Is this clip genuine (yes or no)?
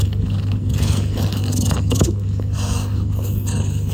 no